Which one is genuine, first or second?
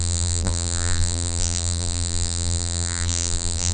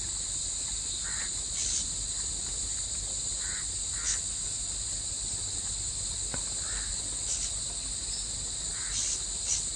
second